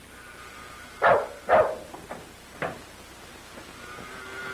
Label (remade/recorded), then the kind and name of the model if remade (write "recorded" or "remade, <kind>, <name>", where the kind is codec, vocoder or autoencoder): recorded